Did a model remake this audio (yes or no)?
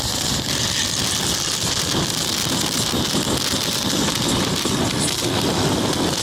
no